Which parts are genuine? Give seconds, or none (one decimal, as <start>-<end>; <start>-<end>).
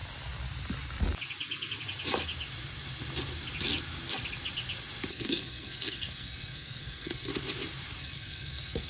0.0-5.1; 7.3-8.0